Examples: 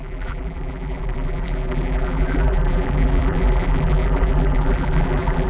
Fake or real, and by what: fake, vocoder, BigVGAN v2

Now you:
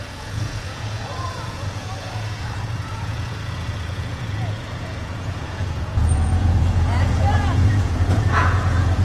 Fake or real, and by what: fake, vocoder, Vocos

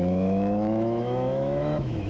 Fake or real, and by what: fake, autoencoder, DAC-VAE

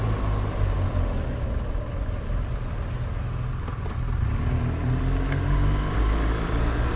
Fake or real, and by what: real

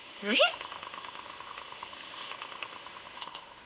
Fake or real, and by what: fake, autoencoder, DAC-VAE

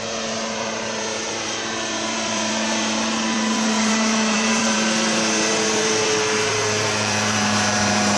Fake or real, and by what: fake, vocoder, BigVGAN v2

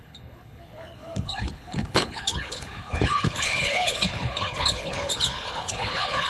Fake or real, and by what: fake, codec, HILCodec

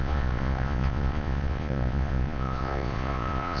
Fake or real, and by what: fake, vocoder, Vocos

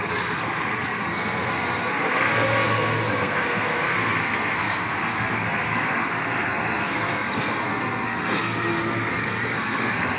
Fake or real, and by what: fake, codec, SNAC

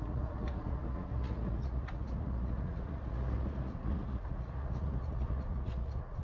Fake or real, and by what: fake, vocoder, Vocos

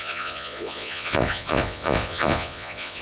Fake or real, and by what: fake, vocoder, Vocos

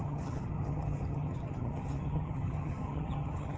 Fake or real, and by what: fake, vocoder, HiFi-GAN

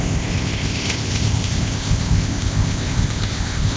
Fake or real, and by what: fake, codec, ZipCodec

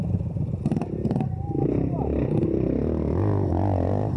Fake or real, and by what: real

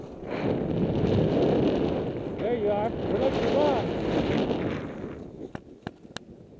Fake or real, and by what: real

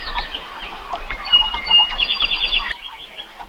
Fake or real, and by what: real